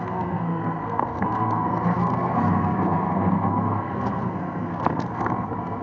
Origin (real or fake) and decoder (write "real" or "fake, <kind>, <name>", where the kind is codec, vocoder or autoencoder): fake, codec, SNAC